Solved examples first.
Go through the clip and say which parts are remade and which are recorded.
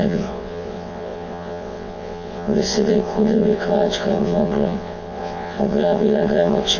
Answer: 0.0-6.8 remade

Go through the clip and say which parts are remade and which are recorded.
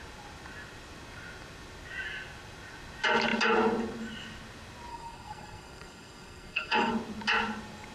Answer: 0.0-4.9 recorded; 4.9-6.9 remade; 6.9-7.9 recorded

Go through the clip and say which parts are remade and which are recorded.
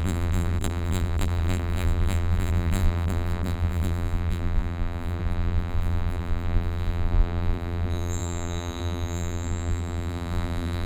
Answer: 0.0-10.9 remade